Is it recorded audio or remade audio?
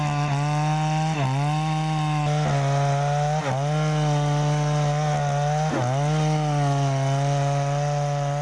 recorded